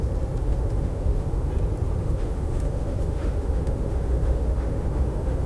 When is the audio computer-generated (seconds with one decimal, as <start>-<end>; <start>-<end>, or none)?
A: 0.4-1.5; 2.0-5.5